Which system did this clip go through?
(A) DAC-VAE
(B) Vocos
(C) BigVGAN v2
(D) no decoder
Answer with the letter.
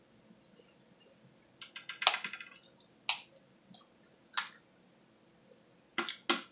D